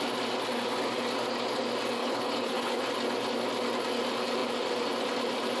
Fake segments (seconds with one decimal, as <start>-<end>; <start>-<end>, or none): 2.0-2.8